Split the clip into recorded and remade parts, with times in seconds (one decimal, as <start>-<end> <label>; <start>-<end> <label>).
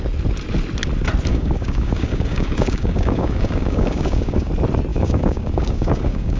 0.0-1.3 recorded; 1.3-4.5 remade; 4.5-4.9 recorded; 4.9-6.4 remade